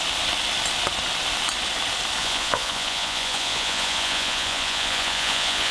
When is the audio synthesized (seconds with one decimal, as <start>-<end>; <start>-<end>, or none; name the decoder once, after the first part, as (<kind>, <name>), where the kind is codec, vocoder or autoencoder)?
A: 2.2-5.7 (vocoder, Vocos)